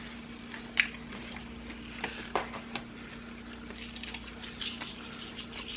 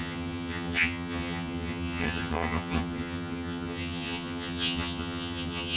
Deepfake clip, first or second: second